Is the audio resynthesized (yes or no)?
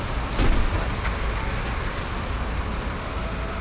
no